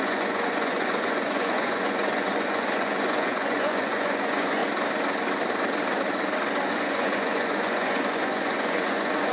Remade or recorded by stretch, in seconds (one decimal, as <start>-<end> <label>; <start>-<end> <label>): 0.0-4.6 remade; 4.6-6.7 recorded; 6.7-9.3 remade